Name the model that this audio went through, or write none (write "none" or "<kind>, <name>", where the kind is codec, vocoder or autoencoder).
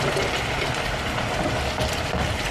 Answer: none